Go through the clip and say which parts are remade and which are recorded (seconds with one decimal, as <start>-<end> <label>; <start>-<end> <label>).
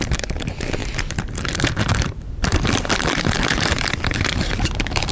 0.0-5.1 remade